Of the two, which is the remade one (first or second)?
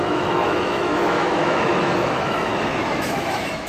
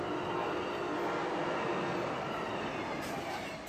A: first